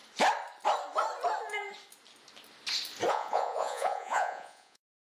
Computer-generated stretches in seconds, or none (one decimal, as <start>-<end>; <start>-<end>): 3.1-5.1